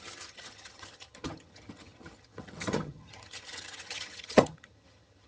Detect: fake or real fake